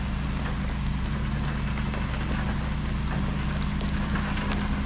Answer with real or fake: real